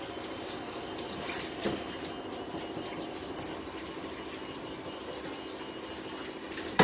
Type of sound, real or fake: real